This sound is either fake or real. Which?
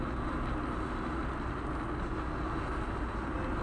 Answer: real